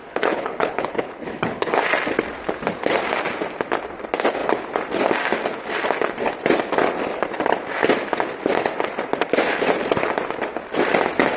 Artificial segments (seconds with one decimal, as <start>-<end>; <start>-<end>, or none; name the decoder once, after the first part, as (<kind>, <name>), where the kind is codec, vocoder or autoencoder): 0.0-1.8 (codec, HILCodec)